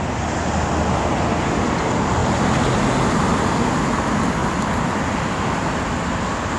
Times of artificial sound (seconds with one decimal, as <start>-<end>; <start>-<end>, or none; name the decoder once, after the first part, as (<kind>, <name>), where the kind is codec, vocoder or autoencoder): 4.4-4.9 (vocoder, BigVGAN v2)